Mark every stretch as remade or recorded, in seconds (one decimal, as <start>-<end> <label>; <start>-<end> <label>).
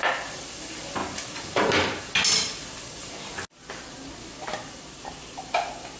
0.0-6.0 recorded